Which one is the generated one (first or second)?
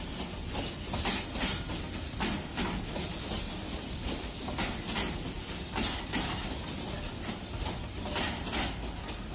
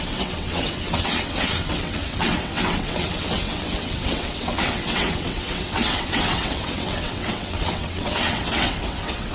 second